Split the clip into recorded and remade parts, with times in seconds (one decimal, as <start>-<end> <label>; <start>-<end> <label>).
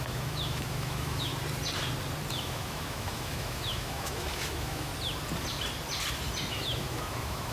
0.0-1.3 remade; 1.3-2.3 recorded; 2.3-4.9 remade; 4.9-6.5 recorded; 6.5-7.5 remade